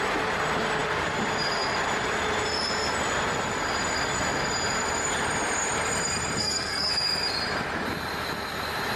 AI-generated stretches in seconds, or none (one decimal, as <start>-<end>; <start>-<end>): 6.4-6.9